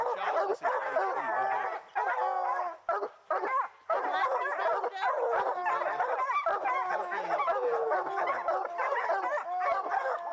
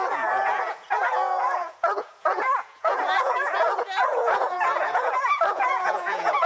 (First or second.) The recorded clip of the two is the first